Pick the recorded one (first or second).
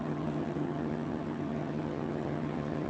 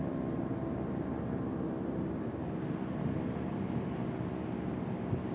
second